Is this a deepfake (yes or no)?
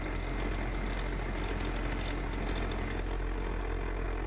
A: no